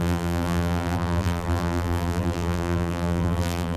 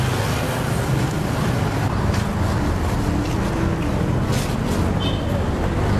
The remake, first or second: first